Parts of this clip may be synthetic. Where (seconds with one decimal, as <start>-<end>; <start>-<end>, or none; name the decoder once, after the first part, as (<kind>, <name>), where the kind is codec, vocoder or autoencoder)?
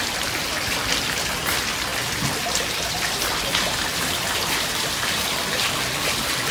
none